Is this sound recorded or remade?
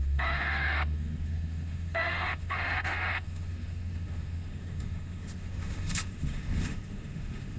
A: remade